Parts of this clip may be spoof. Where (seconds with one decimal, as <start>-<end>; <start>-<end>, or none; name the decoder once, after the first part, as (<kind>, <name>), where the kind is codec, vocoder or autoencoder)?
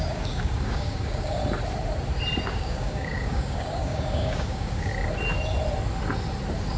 0.0-1.4 (codec, DAC); 2.4-4.9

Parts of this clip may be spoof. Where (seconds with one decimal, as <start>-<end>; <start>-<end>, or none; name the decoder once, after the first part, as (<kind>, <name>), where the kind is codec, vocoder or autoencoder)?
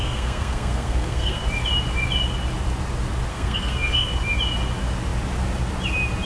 0.0-1.4 (codec, SNAC); 3.3-4.1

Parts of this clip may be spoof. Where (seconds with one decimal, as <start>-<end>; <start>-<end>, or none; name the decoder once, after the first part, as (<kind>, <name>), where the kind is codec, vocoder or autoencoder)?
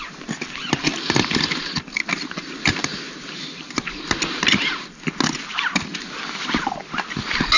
2.8-4.8 (vocoder, BigVGAN v2)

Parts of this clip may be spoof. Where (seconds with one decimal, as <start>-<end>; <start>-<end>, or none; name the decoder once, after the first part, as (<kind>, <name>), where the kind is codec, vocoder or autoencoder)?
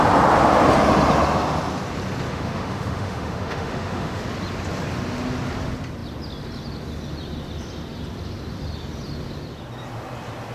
2.3-4.2 (autoencoder, DAC-VAE)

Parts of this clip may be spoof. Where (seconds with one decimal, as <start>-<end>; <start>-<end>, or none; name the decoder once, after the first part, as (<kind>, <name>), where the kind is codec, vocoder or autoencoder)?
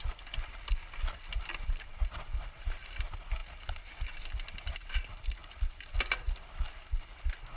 none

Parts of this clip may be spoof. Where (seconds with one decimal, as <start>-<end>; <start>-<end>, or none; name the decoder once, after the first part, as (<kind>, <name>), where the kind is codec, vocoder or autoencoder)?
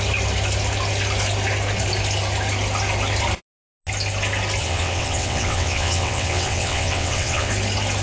4.6-7.5 (vocoder, WaveNeXt)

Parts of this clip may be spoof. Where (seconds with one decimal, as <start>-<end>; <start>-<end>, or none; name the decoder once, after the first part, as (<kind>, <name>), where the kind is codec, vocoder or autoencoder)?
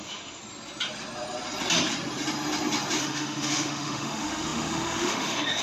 0.0-0.4 (autoencoder, DAC-VAE); 3.0-5.6